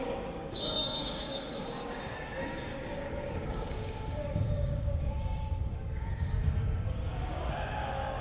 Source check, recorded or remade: remade